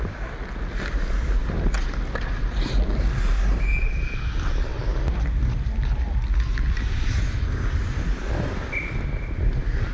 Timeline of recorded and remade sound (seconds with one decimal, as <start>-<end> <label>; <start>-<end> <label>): 0.0-9.9 recorded